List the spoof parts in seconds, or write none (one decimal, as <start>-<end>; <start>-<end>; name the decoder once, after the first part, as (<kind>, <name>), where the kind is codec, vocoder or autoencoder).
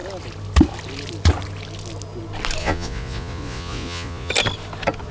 2.6-4.3 (vocoder, Vocos)